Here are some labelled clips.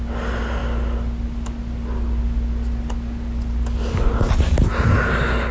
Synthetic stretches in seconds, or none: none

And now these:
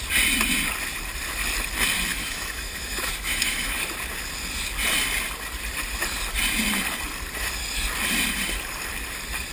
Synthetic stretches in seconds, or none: 2.1-3.8 (autoencoder, DAC-VAE)

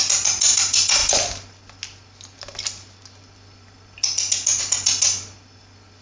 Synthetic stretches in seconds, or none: none